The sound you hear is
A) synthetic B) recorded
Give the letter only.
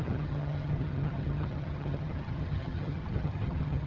A